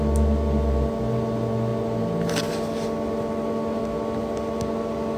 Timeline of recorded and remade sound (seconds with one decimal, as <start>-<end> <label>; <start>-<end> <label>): 0.0-5.2 recorded